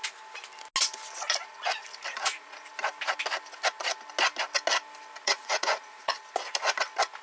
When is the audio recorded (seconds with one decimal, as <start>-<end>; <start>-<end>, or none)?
0.0-2.1; 2.7-5.2; 6.2-7.2